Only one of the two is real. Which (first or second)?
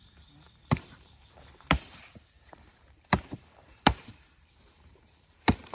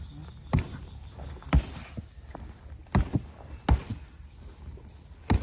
second